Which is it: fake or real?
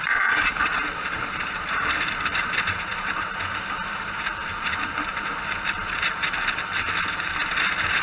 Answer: fake